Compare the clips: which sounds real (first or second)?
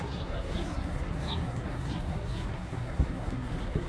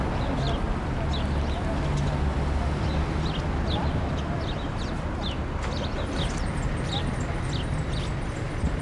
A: second